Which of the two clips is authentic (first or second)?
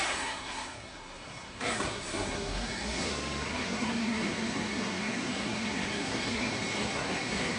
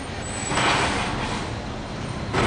second